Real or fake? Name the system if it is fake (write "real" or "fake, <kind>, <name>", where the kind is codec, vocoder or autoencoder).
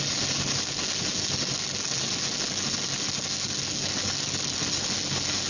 real